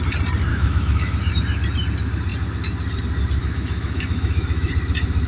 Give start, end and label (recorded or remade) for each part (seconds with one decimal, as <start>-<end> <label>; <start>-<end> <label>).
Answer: 0.0-0.5 recorded; 0.5-1.3 remade; 1.3-3.4 recorded; 3.4-4.7 remade; 4.7-5.3 recorded